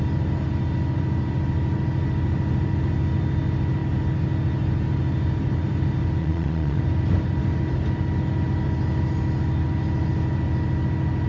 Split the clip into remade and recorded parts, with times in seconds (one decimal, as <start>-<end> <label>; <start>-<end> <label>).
0.0-6.2 recorded; 6.2-6.8 remade; 6.8-11.3 recorded